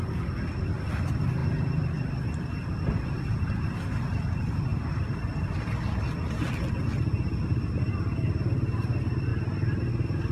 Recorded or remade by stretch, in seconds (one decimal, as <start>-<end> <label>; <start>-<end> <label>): 0.0-1.4 recorded; 1.4-2.1 remade; 2.1-4.7 recorded; 4.7-5.5 remade; 5.5-10.3 recorded